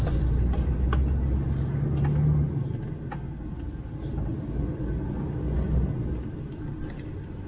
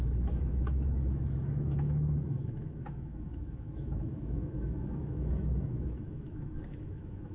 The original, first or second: first